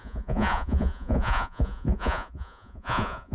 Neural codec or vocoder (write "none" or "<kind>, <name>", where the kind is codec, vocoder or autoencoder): vocoder, Vocos